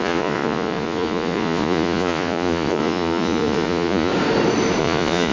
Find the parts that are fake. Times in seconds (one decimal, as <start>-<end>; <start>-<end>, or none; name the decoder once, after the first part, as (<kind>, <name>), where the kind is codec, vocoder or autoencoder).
0.0-4.1 (vocoder, Vocos); 4.8-5.3